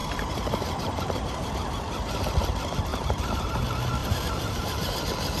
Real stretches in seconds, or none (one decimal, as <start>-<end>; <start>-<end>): 2.2-2.9; 3.6-4.0; 5.0-5.4